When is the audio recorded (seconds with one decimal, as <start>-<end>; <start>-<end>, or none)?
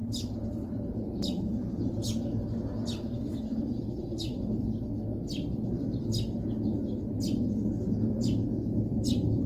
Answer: 4.6-7.8